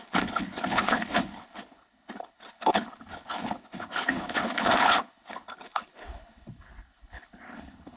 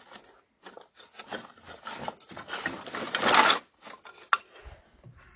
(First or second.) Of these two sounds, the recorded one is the second